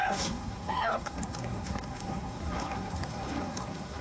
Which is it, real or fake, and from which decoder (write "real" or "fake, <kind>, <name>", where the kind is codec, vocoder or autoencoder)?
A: fake, codec, SNAC